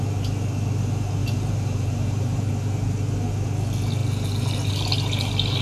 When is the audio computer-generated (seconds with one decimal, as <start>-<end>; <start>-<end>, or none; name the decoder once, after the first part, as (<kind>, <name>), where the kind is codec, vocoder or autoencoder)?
1.2-2.5 (vocoder, BigVGAN v2)